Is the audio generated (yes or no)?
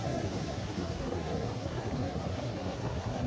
yes